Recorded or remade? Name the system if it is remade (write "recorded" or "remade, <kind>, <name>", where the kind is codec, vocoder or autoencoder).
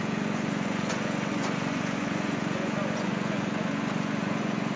remade, vocoder, Vocos